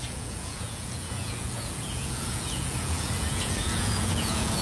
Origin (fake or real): fake